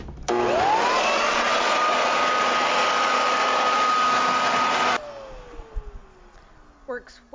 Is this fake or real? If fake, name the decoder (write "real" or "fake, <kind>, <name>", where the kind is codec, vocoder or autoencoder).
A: real